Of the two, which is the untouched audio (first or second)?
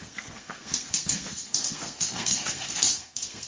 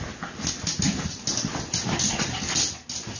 second